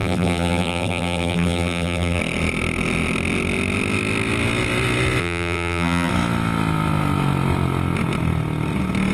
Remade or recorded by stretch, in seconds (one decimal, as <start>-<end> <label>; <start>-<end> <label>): 0.0-2.2 remade; 2.2-5.2 recorded; 5.2-6.1 remade; 6.1-9.1 recorded